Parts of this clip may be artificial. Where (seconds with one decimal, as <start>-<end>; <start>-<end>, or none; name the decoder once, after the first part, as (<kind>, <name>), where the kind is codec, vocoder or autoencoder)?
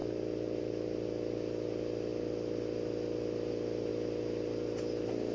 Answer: none